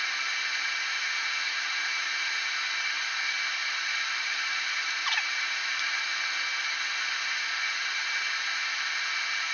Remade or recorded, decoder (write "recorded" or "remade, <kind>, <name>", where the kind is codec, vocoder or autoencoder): recorded